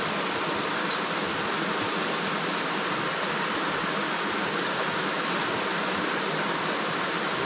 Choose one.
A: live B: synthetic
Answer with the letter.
A